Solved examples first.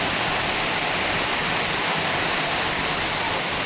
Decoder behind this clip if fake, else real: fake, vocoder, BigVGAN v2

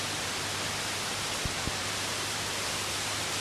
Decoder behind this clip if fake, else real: fake, vocoder, BigVGAN v2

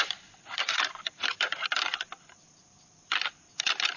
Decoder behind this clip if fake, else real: fake, vocoder, BigVGAN v2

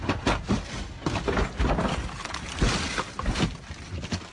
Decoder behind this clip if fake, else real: real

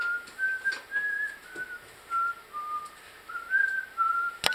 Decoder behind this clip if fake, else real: real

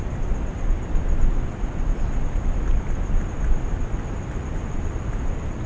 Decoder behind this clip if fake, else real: real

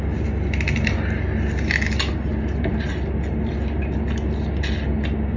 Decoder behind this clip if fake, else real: real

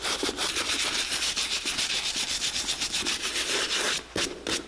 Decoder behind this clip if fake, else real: fake, vocoder, BigVGAN v2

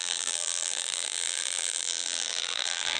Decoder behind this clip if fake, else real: fake, vocoder, BigVGAN v2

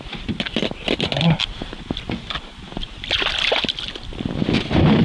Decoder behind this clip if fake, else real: fake, vocoder, BigVGAN v2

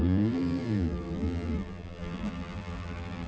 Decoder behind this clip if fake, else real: fake, vocoder, BigVGAN v2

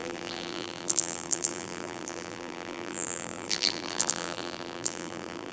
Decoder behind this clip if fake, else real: fake, vocoder, BigVGAN v2